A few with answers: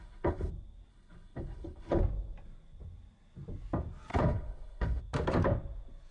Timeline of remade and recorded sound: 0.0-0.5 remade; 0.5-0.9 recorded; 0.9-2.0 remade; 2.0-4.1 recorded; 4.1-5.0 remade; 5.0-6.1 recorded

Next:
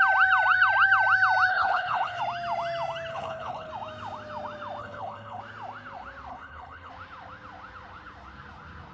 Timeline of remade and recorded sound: 0.0-1.5 recorded; 1.5-2.2 remade; 2.2-3.1 recorded; 3.1-3.7 remade; 3.7-4.8 recorded; 4.8-5.4 remade; 5.4-6.3 recorded; 6.3-6.9 remade; 6.9-8.9 recorded

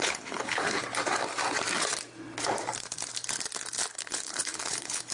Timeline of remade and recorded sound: 0.0-0.8 remade; 0.8-3.9 recorded; 3.9-5.1 remade

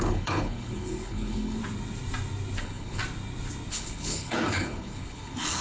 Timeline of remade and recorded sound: 0.0-1.6 remade; 1.6-2.6 recorded; 2.6-3.0 remade; 3.0-3.7 recorded; 3.7-5.6 remade

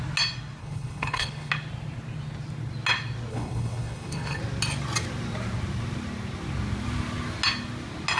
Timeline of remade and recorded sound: 0.0-0.6 recorded; 0.6-1.5 remade; 1.5-3.3 recorded; 3.3-4.4 remade; 4.4-8.2 recorded